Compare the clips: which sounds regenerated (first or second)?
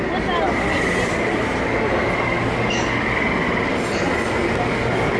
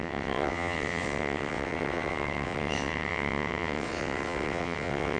second